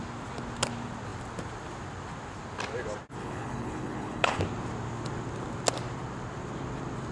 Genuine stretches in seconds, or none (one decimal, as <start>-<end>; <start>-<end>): 0.0-3.2; 4.4-7.1